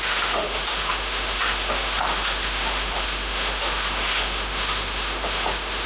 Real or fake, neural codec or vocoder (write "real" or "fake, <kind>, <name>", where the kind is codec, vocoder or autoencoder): fake, autoencoder, DAC-VAE